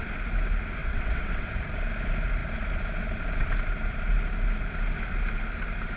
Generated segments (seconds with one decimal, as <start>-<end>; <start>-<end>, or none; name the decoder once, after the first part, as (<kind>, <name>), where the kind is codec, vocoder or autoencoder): 0.8-1.5 (vocoder, WaveNeXt)